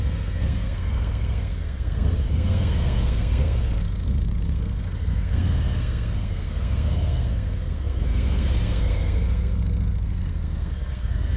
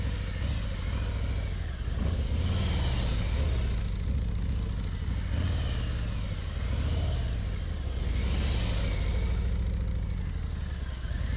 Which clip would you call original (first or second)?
second